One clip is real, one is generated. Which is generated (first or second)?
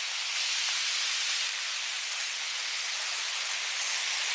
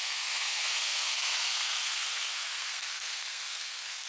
second